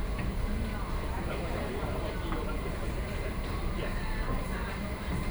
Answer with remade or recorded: remade